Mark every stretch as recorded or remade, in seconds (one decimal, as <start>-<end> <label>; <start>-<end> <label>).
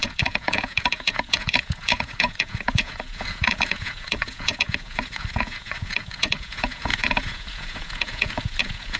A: 0.0-9.0 remade